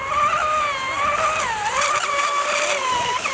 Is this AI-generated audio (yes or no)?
no